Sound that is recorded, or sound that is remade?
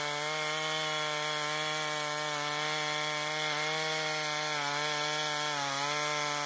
recorded